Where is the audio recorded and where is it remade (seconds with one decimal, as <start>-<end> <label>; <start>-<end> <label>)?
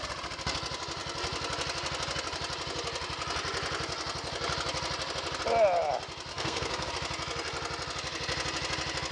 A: 0.0-6.3 recorded; 6.3-6.9 remade; 6.9-9.1 recorded